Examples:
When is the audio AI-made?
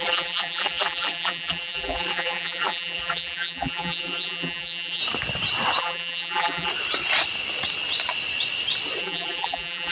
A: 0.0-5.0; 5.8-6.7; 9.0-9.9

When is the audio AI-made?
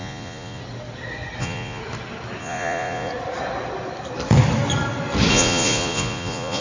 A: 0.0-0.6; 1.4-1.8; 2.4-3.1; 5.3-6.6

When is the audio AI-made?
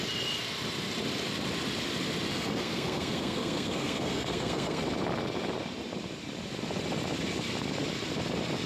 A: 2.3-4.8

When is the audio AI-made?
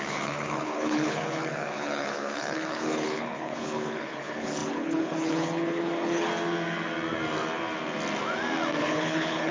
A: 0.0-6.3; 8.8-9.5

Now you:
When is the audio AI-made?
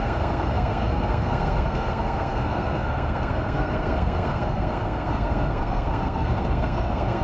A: 0.0-7.2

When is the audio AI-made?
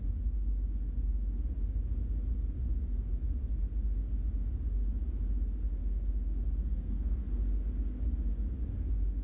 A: 5.8-7.2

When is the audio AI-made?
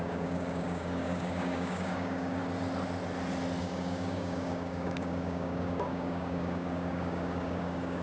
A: 0.0-2.4; 3.6-8.0